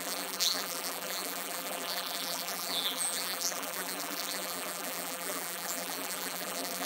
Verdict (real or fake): fake